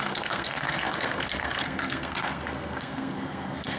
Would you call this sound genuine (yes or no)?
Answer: no